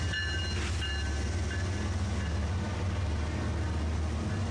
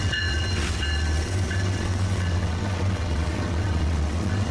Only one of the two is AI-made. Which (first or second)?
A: second